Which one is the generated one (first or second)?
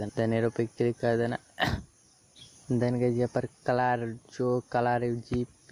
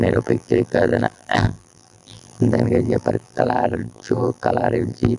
second